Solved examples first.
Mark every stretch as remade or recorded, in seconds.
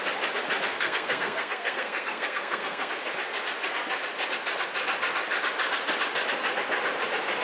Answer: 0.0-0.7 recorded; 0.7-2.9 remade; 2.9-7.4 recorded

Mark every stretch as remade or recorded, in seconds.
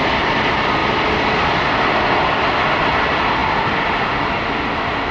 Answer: 0.0-5.1 recorded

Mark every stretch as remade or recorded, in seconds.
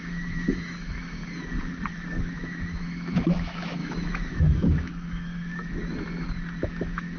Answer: 0.0-1.2 remade; 1.2-2.2 recorded; 2.2-5.5 remade; 5.5-6.6 recorded; 6.6-7.2 remade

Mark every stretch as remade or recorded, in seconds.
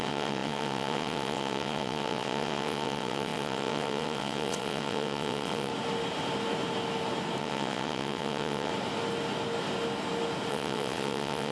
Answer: 0.0-5.7 remade; 5.7-7.4 recorded; 7.4-8.7 remade; 8.7-10.5 recorded; 10.5-11.5 remade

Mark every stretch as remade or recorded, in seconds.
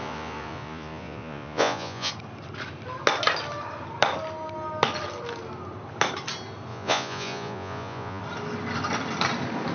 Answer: 0.0-2.1 remade; 2.1-6.7 recorded; 6.7-8.2 remade; 8.2-9.7 recorded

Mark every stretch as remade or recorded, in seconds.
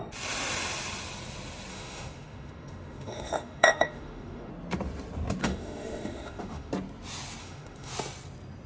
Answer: 0.0-1.7 recorded; 1.7-4.5 remade; 4.5-5.4 recorded; 5.4-6.7 remade; 6.7-7.4 recorded; 7.4-7.9 remade; 7.9-8.7 recorded